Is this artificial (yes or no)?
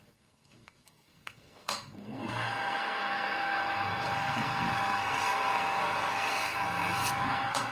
yes